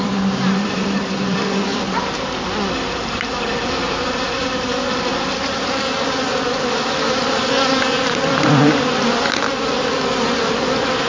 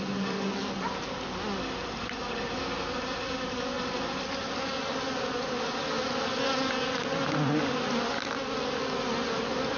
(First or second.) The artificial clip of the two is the first